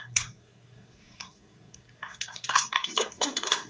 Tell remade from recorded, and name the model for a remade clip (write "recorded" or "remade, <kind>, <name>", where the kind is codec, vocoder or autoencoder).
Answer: remade, codec, SNAC